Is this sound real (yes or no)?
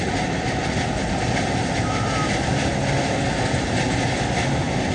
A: yes